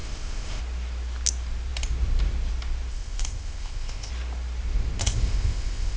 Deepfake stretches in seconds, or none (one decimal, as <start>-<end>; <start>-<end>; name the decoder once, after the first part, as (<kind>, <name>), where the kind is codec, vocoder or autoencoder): 0.0-0.6 (codec, ZipCodec); 2.9-4.1; 5.0-6.0